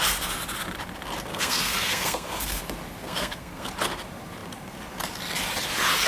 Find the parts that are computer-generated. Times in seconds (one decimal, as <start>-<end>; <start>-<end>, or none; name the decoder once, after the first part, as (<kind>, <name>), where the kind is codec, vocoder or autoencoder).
1.3-2.6 (codec, SNAC); 3.0-3.7